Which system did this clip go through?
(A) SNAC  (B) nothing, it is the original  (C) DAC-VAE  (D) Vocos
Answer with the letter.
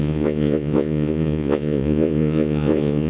D